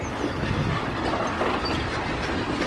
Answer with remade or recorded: recorded